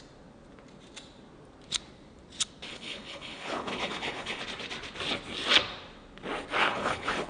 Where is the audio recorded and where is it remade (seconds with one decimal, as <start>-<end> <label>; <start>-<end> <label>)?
0.0-2.7 recorded; 2.7-4.4 remade; 4.4-6.6 recorded; 6.6-7.3 remade